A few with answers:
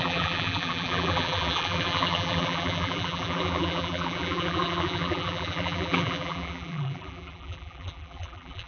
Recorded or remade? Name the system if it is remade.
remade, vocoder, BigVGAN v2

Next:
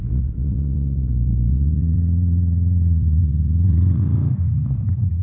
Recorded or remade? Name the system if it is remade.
remade, vocoder, Vocos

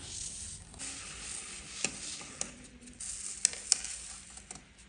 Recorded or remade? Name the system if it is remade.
recorded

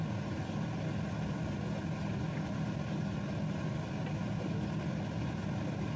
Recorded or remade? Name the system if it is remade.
recorded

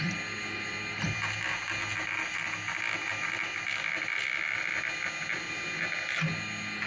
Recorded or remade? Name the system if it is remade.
recorded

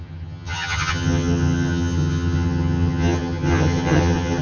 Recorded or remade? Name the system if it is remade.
remade, vocoder, HiFi-GAN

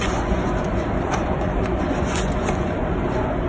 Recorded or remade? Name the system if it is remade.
remade, vocoder, Vocos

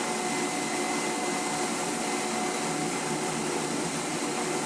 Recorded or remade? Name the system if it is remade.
recorded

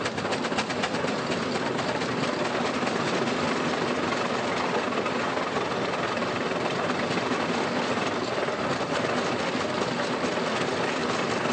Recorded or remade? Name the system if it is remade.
recorded